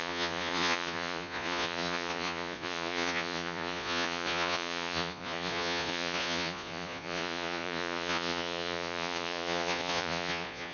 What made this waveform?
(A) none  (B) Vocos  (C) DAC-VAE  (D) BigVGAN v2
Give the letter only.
B